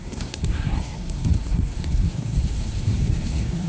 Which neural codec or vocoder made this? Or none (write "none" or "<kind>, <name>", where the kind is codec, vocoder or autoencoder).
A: codec, SNAC